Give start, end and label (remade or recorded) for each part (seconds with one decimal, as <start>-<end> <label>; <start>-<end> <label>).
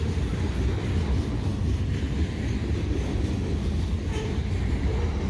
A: 0.0-5.3 recorded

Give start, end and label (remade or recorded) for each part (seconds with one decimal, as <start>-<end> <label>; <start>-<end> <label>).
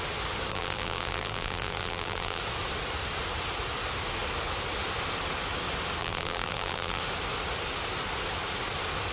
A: 0.0-0.5 recorded; 0.5-2.4 remade; 2.4-6.0 recorded; 6.0-7.0 remade; 7.0-9.1 recorded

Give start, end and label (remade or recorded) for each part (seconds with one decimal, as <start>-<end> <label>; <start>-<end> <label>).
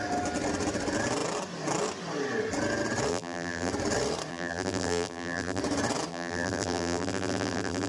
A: 0.0-3.1 recorded; 3.1-3.7 remade; 3.7-4.3 recorded; 4.3-5.6 remade; 5.6-6.1 recorded; 6.1-7.9 remade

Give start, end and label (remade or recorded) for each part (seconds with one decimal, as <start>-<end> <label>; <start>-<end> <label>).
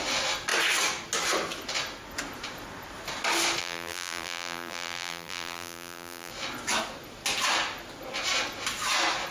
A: 0.0-3.6 recorded; 3.6-6.3 remade; 6.3-9.3 recorded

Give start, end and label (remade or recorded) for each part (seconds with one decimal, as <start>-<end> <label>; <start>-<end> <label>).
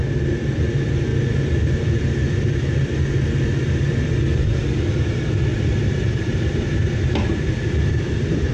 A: 0.0-1.1 recorded; 1.1-4.1 remade; 4.1-5.5 recorded; 5.5-7.8 remade; 7.8-8.5 recorded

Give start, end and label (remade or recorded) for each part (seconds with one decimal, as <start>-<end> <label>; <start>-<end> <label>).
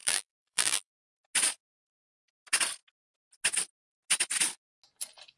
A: 0.0-0.9 remade; 0.9-5.4 recorded